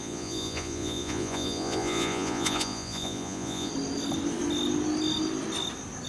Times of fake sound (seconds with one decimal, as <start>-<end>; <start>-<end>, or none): 0.0-3.7